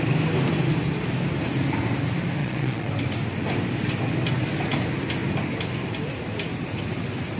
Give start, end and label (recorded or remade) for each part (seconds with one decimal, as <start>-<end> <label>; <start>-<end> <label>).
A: 0.0-2.4 recorded; 2.4-2.9 remade; 2.9-7.4 recorded